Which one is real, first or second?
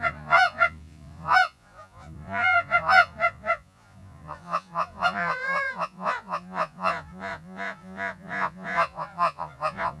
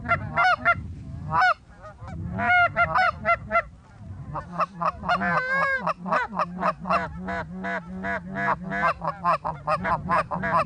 second